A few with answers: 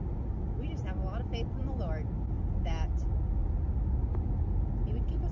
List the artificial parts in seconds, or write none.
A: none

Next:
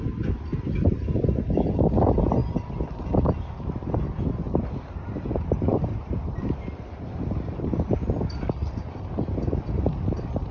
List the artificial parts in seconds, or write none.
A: 5.7-7.2 (vocoder, BigVGAN v2)

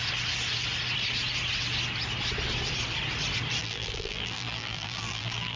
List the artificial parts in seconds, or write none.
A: 3.6-5.6 (vocoder, BigVGAN v2)

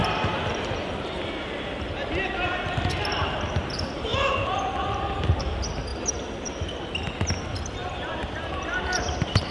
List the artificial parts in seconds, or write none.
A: 4.1-4.6 (vocoder, BigVGAN v2); 7.8-9.5